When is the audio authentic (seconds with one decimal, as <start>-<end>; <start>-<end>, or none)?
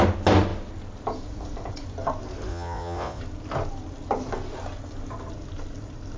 0.0-2.5; 3.2-6.2